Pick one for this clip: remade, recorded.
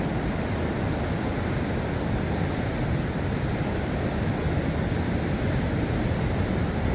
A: recorded